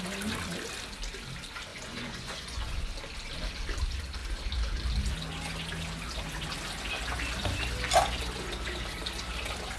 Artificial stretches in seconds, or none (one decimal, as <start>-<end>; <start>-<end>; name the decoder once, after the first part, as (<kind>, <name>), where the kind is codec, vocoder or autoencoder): 1.7-2.9 (vocoder, Vocos)